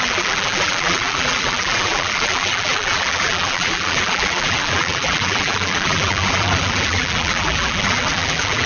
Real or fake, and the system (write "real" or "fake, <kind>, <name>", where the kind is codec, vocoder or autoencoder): fake, vocoder, BigVGAN v2